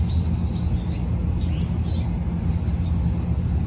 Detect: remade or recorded recorded